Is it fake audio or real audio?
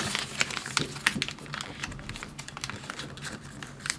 real